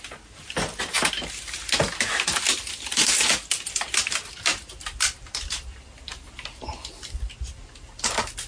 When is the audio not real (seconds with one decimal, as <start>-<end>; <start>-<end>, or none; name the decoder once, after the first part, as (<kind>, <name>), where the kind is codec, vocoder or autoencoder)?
none